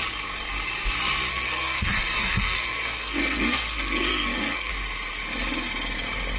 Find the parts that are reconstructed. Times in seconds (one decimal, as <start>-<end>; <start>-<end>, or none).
1.3-4.7